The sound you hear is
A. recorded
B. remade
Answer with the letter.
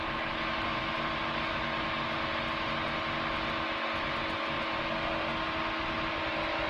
A